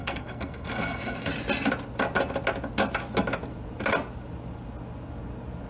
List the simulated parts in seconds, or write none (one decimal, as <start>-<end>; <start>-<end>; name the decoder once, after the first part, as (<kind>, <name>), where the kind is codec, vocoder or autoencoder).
0.0-1.3 (codec, SNAC)